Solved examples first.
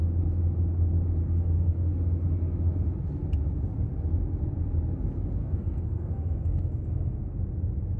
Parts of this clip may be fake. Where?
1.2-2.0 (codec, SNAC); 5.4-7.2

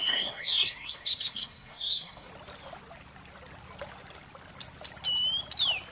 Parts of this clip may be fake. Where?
0.0-2.3 (codec, SNAC)

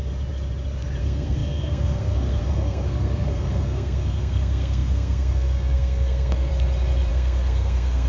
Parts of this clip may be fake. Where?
1.0-6.5 (codec, SNAC); 7.1-8.1

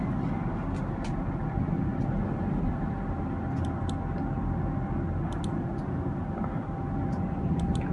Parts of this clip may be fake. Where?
none

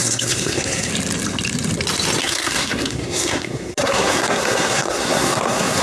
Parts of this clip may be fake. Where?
0.0-0.9 (codec, SNAC); 2.2-5.8